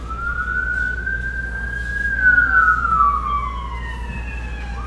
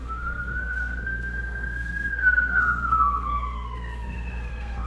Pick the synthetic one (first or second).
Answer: second